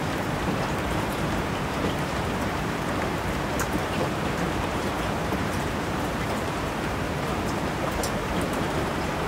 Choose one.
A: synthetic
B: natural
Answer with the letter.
A